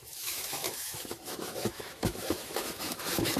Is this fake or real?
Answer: fake